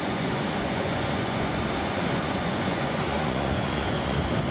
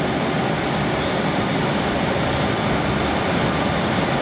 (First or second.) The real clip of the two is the second